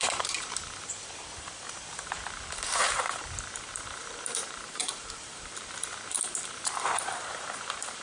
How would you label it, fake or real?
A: fake